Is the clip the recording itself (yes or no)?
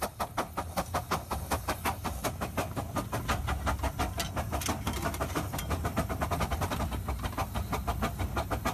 yes